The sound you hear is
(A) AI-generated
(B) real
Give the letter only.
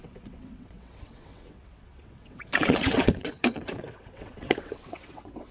A